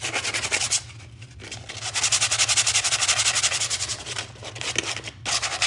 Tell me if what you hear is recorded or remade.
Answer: recorded